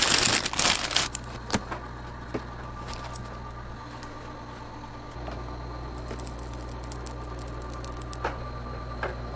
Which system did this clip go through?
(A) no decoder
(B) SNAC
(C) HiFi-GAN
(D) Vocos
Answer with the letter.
A